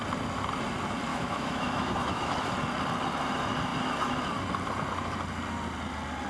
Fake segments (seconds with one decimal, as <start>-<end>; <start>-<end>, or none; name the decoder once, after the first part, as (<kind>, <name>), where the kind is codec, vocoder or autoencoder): 1.1-2.3 (autoencoder, DAC-VAE)